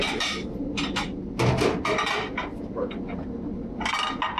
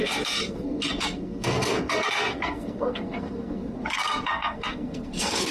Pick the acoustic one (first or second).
first